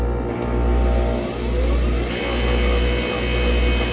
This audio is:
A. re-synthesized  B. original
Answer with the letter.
B